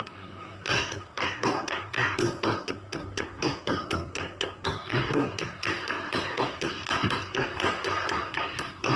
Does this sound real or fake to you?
fake